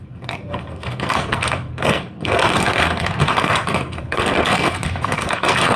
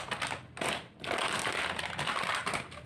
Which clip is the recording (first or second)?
second